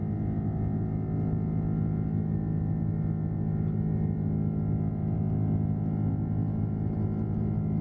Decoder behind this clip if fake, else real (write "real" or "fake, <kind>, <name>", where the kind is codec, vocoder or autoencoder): real